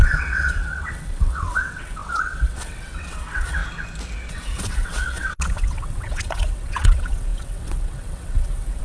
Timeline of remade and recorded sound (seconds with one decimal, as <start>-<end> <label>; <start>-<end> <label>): 0.0-3.6 remade; 3.6-4.3 recorded; 4.3-8.8 remade